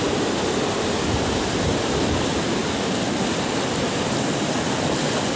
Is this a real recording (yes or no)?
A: yes